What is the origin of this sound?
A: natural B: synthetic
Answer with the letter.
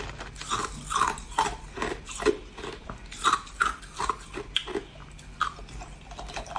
A